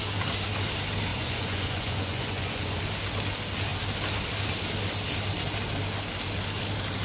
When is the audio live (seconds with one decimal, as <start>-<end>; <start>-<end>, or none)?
0.0-1.1; 2.8-7.0